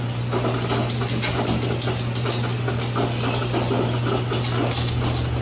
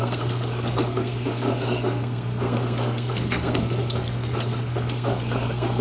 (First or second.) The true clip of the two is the first